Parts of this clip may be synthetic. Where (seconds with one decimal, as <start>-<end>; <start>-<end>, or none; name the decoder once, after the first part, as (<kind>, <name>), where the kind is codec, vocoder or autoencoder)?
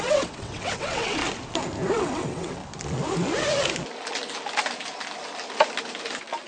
0.0-1.2 (vocoder, WaveNeXt); 1.9-2.6